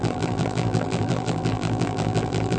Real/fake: fake